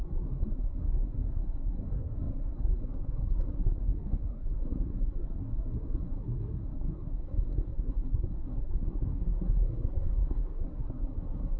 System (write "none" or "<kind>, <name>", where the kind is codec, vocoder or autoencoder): codec, SNAC